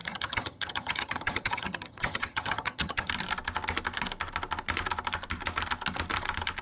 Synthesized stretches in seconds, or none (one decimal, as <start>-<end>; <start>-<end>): 0.0-3.1